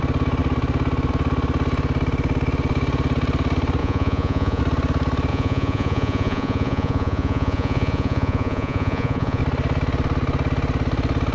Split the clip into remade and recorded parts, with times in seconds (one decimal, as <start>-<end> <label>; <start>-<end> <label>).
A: 0.0-3.8 recorded; 3.8-4.6 remade; 4.6-5.3 recorded; 5.3-9.4 remade; 9.4-11.3 recorded